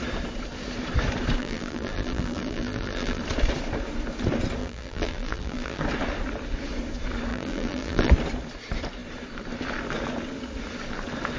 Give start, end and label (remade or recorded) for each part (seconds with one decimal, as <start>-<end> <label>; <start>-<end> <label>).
0.0-1.4 recorded; 1.4-3.2 remade; 3.2-4.6 recorded; 4.6-5.8 remade; 5.8-7.3 recorded; 7.3-8.1 remade; 8.1-11.4 recorded